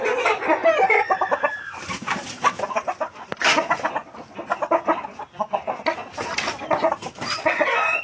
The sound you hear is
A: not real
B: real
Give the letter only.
B